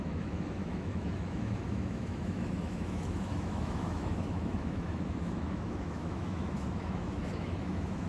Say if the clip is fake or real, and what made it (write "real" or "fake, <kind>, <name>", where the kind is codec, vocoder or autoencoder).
fake, autoencoder, DAC-VAE